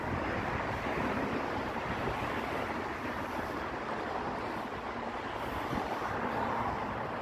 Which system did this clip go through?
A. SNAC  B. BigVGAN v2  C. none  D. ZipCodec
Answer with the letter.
C